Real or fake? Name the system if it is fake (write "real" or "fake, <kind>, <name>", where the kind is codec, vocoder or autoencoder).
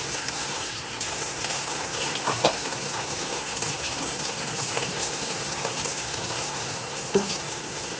fake, codec, SNAC